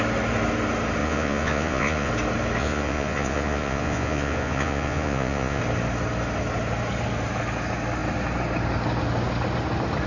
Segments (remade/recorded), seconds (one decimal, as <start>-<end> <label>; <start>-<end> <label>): 0.0-1.0 recorded; 1.0-2.1 remade; 2.1-2.6 recorded; 2.6-5.6 remade; 5.6-10.1 recorded